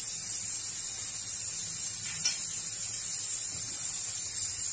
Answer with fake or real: real